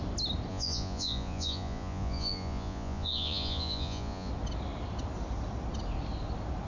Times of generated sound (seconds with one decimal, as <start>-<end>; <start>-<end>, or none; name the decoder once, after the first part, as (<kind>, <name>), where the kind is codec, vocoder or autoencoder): 0.5-4.3 (vocoder, Vocos)